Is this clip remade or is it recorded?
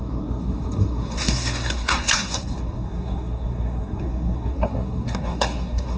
remade